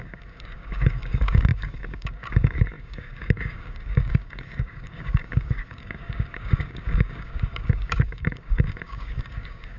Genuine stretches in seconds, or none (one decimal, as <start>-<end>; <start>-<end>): none